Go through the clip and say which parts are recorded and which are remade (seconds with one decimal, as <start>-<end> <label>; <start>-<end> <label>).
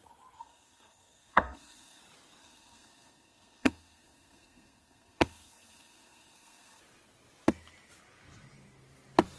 0.0-0.4 recorded; 0.4-2.0 remade; 2.0-2.4 recorded; 2.4-6.8 remade; 6.8-9.4 recorded